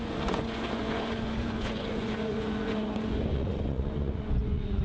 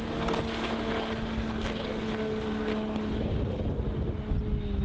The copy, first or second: first